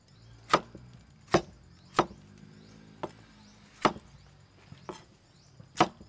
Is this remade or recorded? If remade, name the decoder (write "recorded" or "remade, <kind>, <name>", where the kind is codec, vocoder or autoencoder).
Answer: recorded